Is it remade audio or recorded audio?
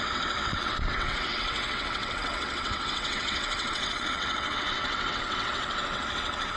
remade